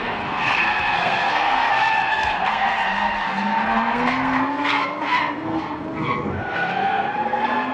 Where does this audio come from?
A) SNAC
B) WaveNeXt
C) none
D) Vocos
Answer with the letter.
A